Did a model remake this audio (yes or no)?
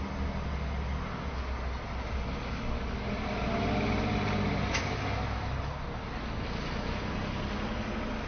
no